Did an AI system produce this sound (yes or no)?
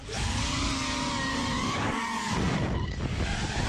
yes